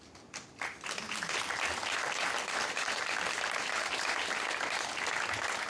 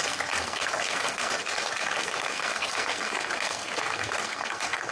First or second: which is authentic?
first